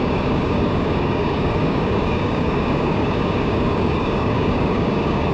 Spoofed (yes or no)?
yes